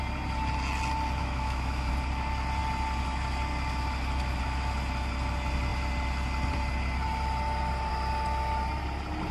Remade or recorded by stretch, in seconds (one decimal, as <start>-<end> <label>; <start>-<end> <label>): 0.0-1.2 recorded; 1.2-1.9 remade; 1.9-9.3 recorded